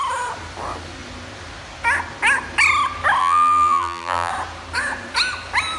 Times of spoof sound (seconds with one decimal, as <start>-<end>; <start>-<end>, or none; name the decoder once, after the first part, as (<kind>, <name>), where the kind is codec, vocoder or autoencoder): 3.2-4.3 (vocoder, BigVGAN v2)